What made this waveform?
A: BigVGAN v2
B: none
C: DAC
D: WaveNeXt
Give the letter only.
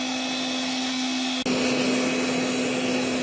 B